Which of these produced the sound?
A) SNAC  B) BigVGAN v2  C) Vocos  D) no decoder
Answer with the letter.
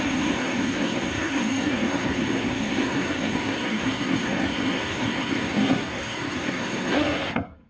A